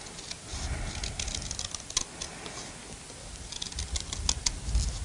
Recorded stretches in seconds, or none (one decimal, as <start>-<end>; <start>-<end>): 0.0-5.0